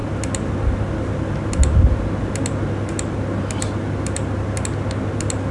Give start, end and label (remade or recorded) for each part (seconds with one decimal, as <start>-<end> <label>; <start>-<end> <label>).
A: 0.0-5.5 recorded

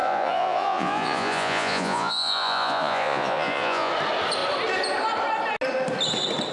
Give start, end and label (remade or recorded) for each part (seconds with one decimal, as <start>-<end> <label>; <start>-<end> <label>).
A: 0.0-3.9 remade; 3.9-6.5 recorded

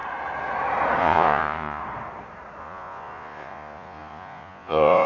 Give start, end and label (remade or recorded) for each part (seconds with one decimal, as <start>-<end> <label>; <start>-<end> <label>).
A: 0.0-1.0 recorded; 1.0-1.8 remade; 1.8-2.6 recorded; 2.6-5.1 remade

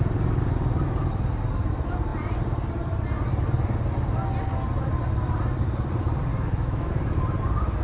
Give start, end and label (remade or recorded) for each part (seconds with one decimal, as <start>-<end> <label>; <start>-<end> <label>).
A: 0.0-6.3 recorded; 6.3-6.9 remade; 6.9-7.8 recorded

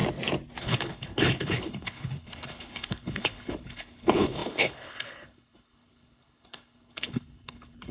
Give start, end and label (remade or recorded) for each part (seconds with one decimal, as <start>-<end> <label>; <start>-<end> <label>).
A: 0.0-0.6 recorded; 0.6-7.9 remade